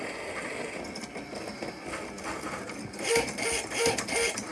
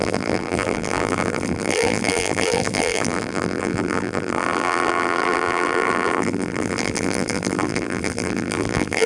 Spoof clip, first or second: second